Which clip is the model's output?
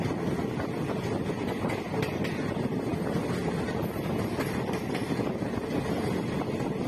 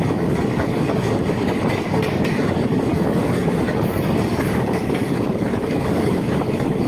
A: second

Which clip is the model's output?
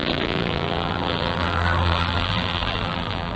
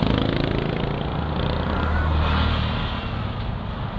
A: first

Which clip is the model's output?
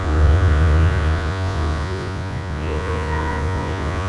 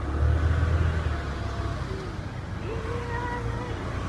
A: first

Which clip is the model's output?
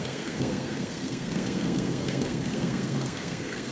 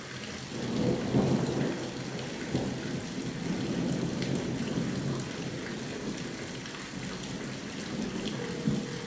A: first